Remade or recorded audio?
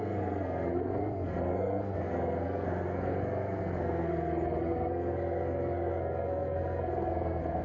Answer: remade